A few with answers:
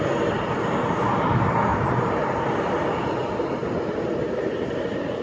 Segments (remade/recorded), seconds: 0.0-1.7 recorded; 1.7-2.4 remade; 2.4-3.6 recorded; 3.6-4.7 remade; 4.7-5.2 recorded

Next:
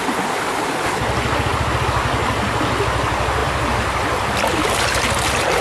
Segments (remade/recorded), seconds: 0.0-3.4 recorded; 3.4-5.6 remade